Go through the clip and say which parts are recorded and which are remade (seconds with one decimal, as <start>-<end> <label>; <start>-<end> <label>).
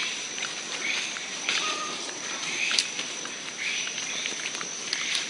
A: 0.0-5.3 remade